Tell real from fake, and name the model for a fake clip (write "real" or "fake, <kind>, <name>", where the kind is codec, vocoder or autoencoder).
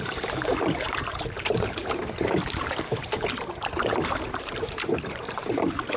fake, vocoder, BigVGAN v2